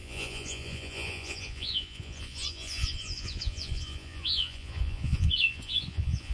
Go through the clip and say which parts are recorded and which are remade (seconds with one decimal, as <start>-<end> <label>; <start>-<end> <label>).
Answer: 0.0-6.3 remade